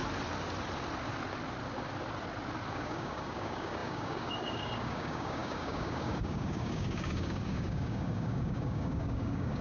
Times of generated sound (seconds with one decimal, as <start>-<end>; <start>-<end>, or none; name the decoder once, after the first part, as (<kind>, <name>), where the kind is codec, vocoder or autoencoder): 2.7-9.6 (codec, DAC)